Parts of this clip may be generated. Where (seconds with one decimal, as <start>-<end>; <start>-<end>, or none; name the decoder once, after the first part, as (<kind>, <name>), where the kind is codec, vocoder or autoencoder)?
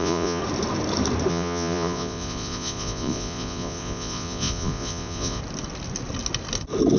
0.0-0.4 (vocoder, Vocos); 1.3-5.4